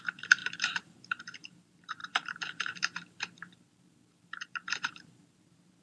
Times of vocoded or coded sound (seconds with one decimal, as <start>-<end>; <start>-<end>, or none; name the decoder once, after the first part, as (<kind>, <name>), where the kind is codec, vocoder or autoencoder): 0.0-5.8 (vocoder, BigVGAN v2)